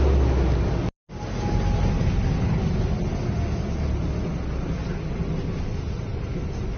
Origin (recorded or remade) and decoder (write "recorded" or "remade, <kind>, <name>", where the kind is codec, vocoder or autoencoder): recorded